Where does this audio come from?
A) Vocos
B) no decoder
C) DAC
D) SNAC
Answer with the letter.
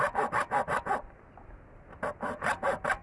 B